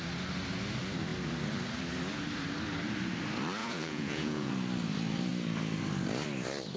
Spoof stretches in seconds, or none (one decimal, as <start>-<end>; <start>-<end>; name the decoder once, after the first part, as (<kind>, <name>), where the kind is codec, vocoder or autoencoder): 3.6-4.5 (vocoder, Vocos)